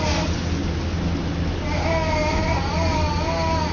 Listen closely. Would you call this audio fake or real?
real